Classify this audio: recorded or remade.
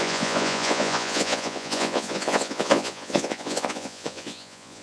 remade